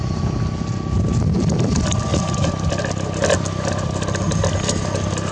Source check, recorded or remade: recorded